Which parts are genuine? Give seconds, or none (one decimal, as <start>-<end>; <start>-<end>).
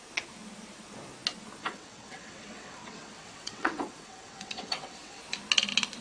0.0-1.6; 5.2-6.0